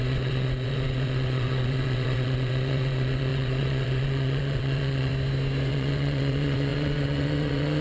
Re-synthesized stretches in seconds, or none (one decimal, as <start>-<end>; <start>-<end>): 0.0-5.1; 5.7-7.8

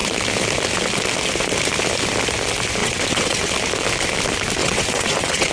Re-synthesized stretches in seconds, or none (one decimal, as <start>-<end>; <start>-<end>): 2.8-3.5; 4.6-5.5